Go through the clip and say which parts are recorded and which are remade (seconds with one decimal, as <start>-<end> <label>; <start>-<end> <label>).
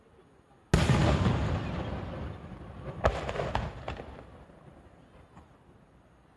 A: 0.0-6.4 recorded